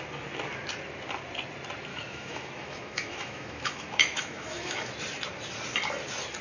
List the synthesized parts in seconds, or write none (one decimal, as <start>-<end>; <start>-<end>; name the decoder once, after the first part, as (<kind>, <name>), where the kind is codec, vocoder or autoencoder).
1.9-4.9 (autoencoder, DAC-VAE)